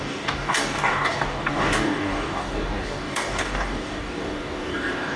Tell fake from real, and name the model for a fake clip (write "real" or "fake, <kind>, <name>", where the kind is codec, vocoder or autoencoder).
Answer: fake, codec, DAC